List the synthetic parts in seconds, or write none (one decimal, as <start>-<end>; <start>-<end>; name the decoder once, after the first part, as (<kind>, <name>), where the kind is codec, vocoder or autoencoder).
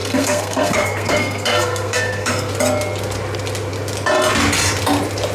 0.0-2.5 (codec, SNAC)